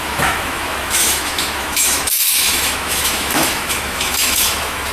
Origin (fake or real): fake